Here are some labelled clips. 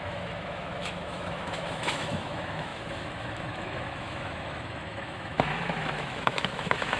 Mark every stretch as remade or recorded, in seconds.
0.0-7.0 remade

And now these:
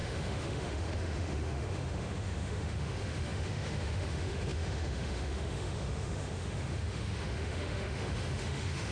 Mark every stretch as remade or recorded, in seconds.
0.0-8.9 remade

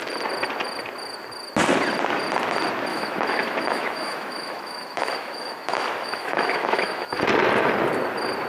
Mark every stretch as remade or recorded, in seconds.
0.0-2.9 recorded; 2.9-7.2 remade; 7.2-8.5 recorded

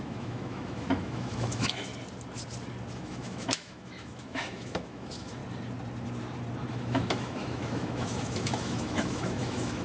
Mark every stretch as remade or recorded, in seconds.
0.0-1.9 remade; 1.9-2.9 recorded; 2.9-5.4 remade; 5.4-6.7 recorded; 6.7-9.8 remade

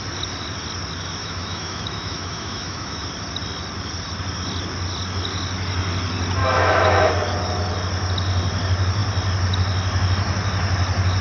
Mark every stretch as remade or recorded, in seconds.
0.0-1.2 recorded; 1.2-3.1 remade; 3.1-6.4 recorded; 6.4-7.1 remade; 7.1-11.2 recorded

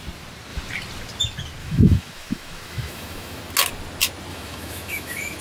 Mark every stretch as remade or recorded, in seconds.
0.0-1.6 recorded; 1.6-3.4 remade; 3.4-4.3 recorded; 4.3-5.4 remade

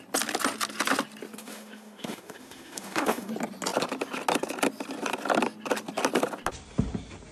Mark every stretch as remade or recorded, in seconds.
0.0-1.4 recorded; 1.4-3.3 remade; 3.3-7.3 recorded